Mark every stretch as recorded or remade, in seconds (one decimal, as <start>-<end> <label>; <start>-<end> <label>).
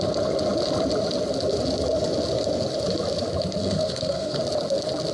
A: 0.0-3.6 recorded; 3.6-4.4 remade; 4.4-5.1 recorded